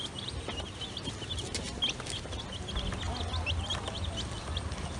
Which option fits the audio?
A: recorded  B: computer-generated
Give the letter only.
A